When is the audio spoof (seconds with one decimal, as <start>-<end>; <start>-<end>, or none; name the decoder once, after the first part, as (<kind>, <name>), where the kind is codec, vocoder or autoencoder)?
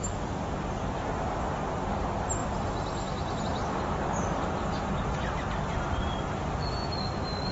2.4-3.4 (vocoder, BigVGAN v2)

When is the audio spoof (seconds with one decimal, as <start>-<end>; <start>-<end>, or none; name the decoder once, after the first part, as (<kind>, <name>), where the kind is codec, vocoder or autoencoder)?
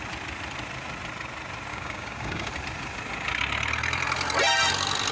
1.7-2.5 (codec, DAC)